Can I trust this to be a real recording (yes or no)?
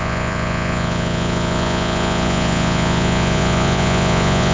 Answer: no